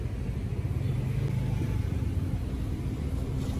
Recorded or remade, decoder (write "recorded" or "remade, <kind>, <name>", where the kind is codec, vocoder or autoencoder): recorded